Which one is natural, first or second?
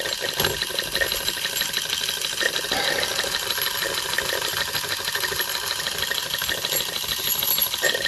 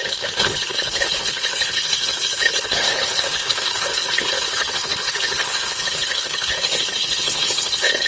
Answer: first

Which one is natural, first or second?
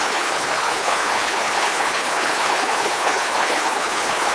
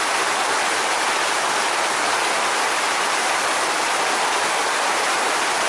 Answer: second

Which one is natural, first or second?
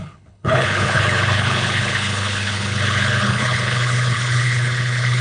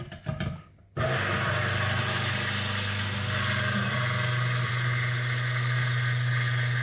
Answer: second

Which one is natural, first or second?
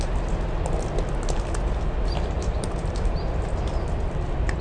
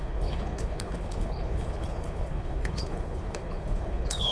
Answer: first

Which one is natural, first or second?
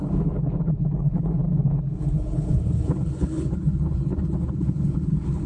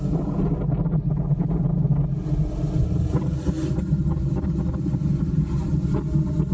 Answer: second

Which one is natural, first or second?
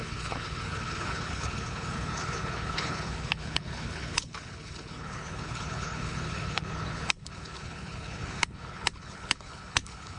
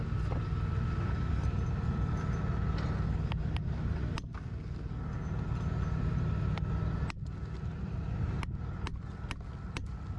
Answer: second